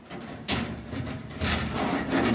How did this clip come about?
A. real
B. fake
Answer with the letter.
B